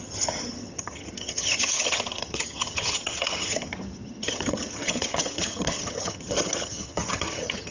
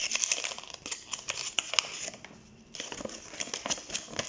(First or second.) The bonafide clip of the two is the second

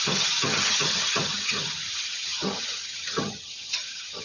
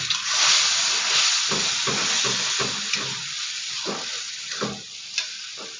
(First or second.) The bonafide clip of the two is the second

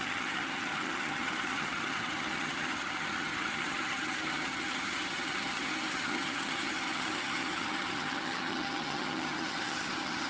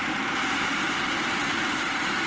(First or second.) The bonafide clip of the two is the second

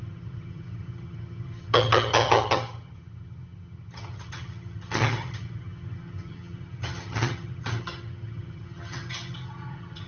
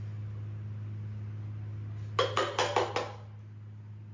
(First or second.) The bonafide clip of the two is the second